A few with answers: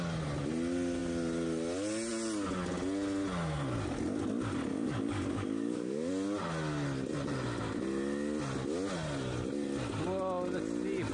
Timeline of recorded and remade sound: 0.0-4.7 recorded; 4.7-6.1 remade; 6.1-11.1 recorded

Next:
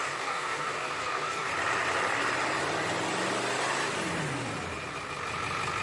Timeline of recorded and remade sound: 0.0-1.5 remade; 1.5-5.8 recorded

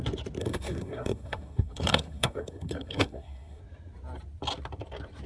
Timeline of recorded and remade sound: 0.0-0.4 recorded; 0.4-3.6 remade; 3.6-5.3 recorded

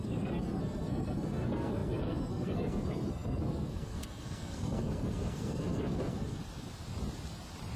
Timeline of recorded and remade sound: 0.0-6.4 remade; 6.4-7.8 recorded

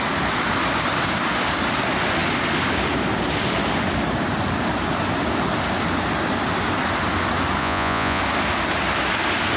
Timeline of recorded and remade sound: 0.0-7.6 recorded; 7.6-8.2 remade; 8.2-9.6 recorded

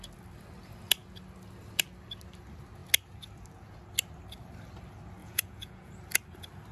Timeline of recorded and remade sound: 0.0-5.2 recorded; 5.2-5.9 remade; 5.9-6.7 recorded

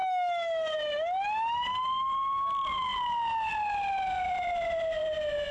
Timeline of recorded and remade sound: 0.0-5.5 recorded

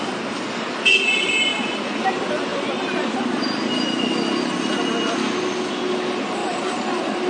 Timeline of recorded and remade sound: 0.0-2.5 recorded; 2.5-3.3 remade; 3.3-6.4 recorded; 6.4-7.3 remade